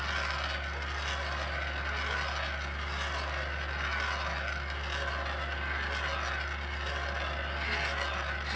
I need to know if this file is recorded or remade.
recorded